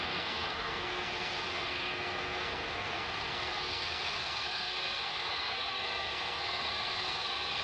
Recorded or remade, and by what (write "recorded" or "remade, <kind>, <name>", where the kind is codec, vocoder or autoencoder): remade, codec, SNAC